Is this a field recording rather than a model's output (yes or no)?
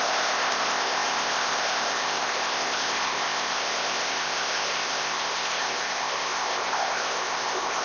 no